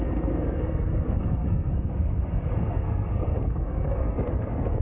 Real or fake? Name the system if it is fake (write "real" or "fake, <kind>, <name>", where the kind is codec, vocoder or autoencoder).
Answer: fake, codec, SNAC